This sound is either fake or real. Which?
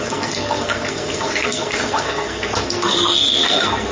fake